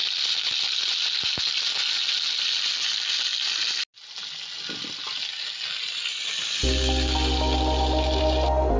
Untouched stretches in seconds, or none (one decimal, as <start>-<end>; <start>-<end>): 0.0-8.8